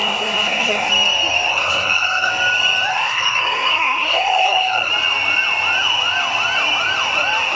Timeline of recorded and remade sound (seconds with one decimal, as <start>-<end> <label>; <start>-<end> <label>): 0.0-0.9 remade; 0.9-1.5 recorded; 1.5-2.3 remade; 2.3-2.9 recorded; 2.9-4.9 remade; 4.9-7.6 recorded